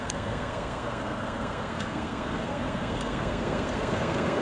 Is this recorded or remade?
remade